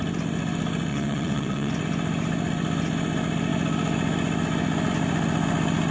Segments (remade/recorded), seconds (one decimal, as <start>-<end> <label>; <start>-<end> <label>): 0.0-0.9 recorded; 0.9-1.7 remade; 1.7-5.9 recorded